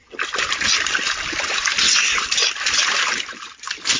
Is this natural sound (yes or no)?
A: yes